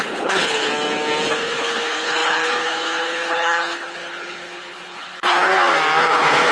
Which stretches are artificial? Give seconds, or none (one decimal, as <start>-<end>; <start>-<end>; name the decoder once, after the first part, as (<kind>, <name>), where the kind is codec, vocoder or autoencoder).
0.0-0.7 (codec, HILCodec); 1.3-5.5; 6.0-6.5